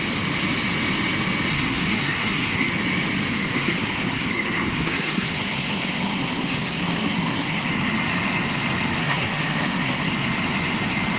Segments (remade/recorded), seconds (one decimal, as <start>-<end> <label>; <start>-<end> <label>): 0.0-1.5 recorded; 1.5-2.7 remade; 2.7-3.3 recorded; 3.3-7.7 remade; 7.7-9.0 recorded; 9.0-10.1 remade; 10.1-11.2 recorded